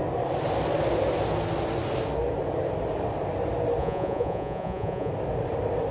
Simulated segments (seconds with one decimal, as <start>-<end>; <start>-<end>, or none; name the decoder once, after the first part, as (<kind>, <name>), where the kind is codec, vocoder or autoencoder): 3.8-5.1 (vocoder, Vocos)

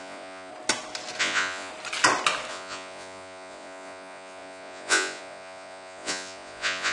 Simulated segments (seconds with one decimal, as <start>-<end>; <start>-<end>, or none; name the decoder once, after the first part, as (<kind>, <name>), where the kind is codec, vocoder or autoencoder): 0.0-0.5 (vocoder, Vocos); 1.2-1.7; 2.5-6.9

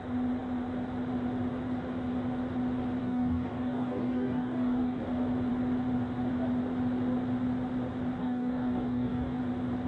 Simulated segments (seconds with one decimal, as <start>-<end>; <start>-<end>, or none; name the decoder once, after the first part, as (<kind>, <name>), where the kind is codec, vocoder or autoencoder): 3.0-5.0 (codec, DAC); 8.2-9.4

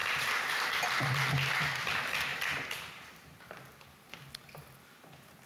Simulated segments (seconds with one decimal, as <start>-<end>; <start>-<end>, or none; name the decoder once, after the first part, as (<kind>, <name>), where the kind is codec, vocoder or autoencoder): 0.0-0.8 (vocoder, BigVGAN v2); 2.3-4.3